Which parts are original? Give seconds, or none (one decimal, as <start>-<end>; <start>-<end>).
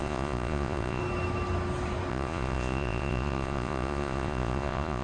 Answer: 1.0-2.1